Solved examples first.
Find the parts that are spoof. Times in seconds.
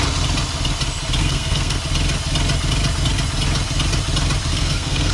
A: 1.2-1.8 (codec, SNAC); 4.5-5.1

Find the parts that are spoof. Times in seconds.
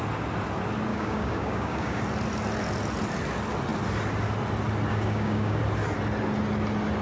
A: 0.9-2.0 (codec, DAC); 4.9-5.6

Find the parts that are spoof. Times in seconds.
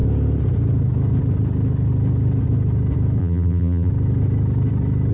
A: 3.2-3.9 (vocoder, BigVGAN v2)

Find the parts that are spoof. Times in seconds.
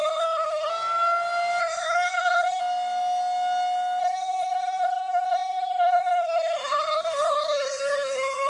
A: 0.0-0.7 (codec, SNAC); 1.6-2.6; 4.0-8.5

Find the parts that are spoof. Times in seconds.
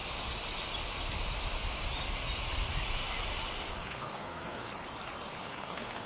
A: 3.7-4.7 (codec, SNAC); 5.4-6.1